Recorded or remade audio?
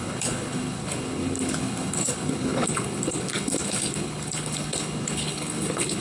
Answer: remade